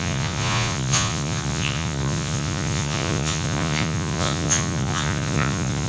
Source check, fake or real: fake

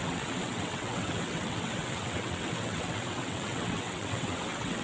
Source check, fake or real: fake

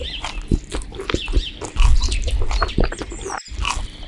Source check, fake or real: real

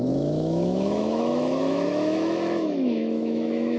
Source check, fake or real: fake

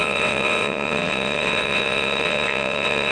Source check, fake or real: fake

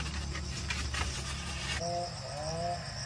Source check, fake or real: real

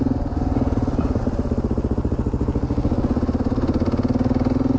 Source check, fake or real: real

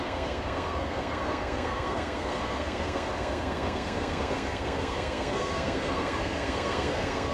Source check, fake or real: fake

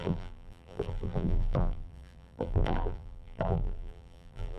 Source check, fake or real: fake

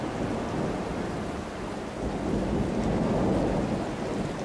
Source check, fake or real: real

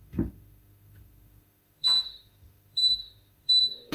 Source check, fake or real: fake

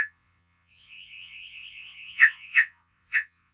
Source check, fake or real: fake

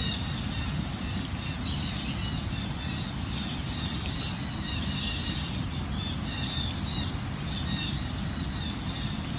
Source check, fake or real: real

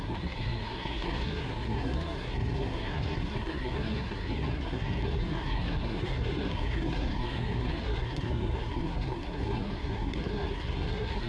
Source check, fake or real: fake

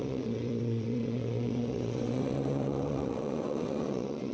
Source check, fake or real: fake